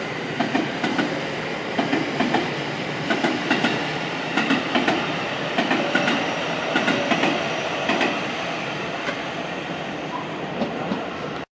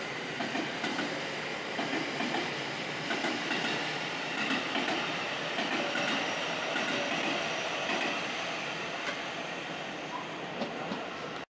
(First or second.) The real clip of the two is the second